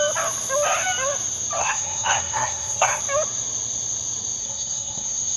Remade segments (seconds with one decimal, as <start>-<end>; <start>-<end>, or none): 1.6-3.0; 4.4-5.4